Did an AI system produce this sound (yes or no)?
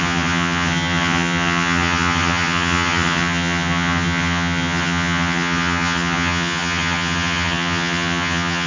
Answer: yes